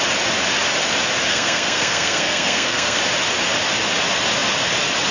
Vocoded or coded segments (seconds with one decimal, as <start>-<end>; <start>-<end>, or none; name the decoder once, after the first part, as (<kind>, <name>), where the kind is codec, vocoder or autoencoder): 1.3-3.0 (codec, SNAC)